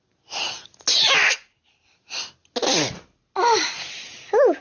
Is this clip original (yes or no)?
yes